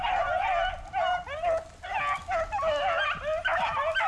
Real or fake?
real